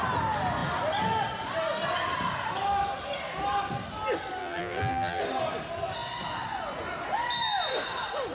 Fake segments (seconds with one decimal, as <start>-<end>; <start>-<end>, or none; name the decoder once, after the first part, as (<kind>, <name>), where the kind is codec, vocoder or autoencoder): 4.4-5.2 (vocoder, BigVGAN v2)